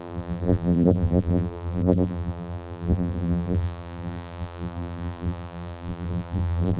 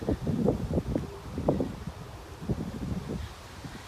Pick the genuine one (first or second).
second